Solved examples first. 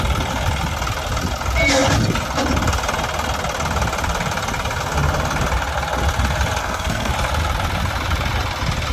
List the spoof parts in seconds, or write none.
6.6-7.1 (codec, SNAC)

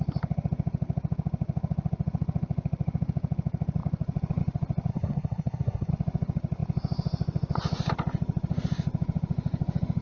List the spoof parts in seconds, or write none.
4.9-5.9 (codec, SNAC)

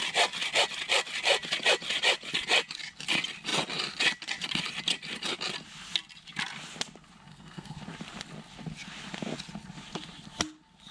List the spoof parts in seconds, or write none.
7.3-7.8 (codec, SNAC)

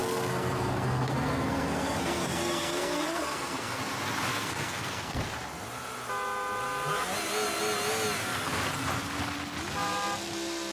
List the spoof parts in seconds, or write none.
0.0-3.8 (codec, SNAC); 4.3-5.2

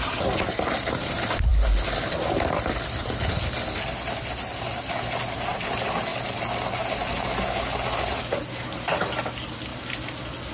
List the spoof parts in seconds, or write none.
none

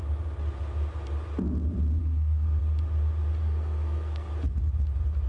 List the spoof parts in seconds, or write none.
2.0-2.6 (codec, SNAC); 3.4-4.3

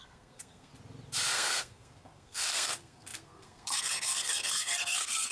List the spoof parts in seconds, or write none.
0.0-0.7 (codec, SNAC); 1.3-5.3